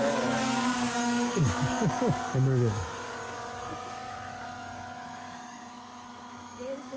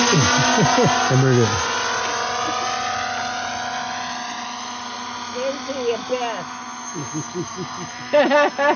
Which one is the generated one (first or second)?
first